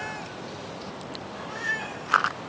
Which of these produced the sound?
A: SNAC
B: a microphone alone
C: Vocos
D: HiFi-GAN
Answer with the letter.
B